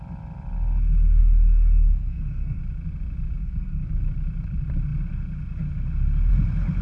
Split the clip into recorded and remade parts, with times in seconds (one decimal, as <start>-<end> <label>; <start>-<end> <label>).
0.0-1.2 recorded; 1.2-2.6 remade; 2.6-3.4 recorded; 3.4-4.0 remade; 4.0-6.8 recorded